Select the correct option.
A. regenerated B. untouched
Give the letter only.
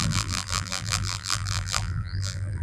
A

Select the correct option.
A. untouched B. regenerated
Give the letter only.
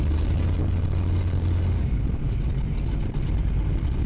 A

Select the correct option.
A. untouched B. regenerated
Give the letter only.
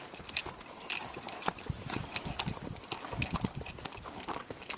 A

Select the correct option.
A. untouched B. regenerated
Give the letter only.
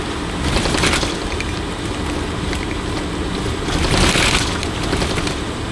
A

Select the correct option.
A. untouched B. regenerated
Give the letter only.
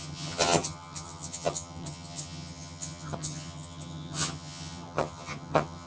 B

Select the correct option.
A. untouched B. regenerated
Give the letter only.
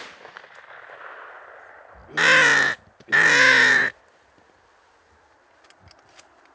A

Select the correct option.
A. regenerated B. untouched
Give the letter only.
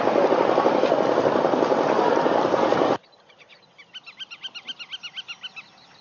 B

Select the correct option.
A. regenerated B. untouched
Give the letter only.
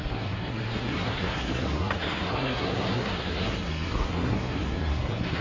A